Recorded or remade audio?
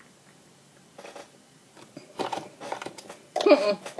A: recorded